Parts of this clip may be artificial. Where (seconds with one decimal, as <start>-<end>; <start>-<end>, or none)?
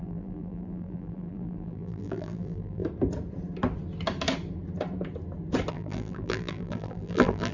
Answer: 0.0-2.8; 5.7-7.5